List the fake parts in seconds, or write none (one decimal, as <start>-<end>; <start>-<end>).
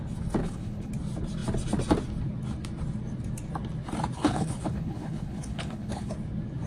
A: 0.4-0.9; 4.2-6.1